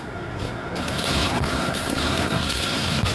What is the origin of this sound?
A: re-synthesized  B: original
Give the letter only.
A